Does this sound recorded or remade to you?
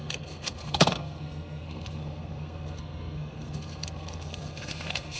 remade